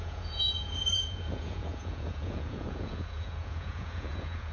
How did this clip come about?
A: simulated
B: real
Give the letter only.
A